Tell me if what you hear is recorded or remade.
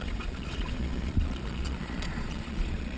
remade